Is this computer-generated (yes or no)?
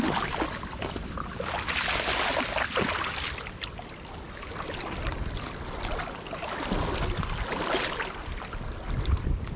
no